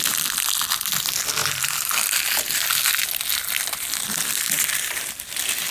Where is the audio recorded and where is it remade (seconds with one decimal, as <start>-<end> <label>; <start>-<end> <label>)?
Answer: 0.0-1.4 recorded; 1.4-1.9 remade; 1.9-5.7 recorded